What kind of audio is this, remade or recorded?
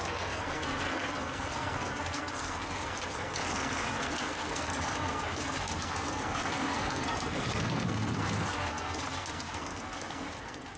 remade